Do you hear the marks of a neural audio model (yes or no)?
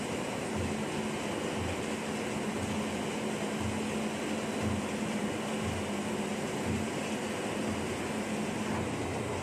no